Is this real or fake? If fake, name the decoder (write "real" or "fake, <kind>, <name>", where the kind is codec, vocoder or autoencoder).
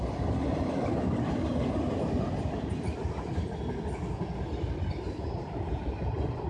real